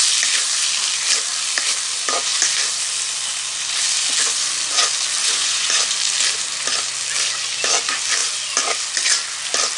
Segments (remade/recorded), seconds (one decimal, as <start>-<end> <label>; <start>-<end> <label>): 0.0-5.2 recorded; 5.2-5.8 remade; 5.8-9.8 recorded